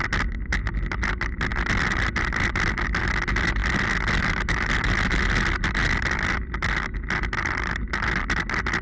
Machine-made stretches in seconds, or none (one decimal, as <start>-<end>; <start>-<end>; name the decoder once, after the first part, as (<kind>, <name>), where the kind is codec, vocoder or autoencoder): none